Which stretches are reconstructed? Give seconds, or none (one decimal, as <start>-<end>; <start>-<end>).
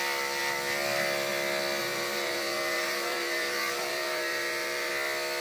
1.8-4.9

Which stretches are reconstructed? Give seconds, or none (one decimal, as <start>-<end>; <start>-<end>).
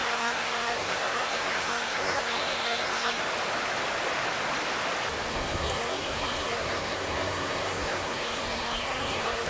0.0-3.2; 5.3-9.5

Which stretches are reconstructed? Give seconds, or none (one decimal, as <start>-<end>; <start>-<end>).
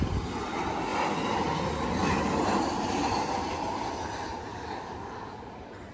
4.5-5.3